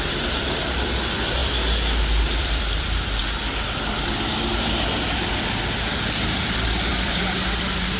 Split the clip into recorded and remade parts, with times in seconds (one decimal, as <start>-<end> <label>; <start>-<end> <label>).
0.0-1.4 remade; 1.4-2.4 recorded; 2.4-3.2 remade; 3.2-6.9 recorded; 6.9-8.0 remade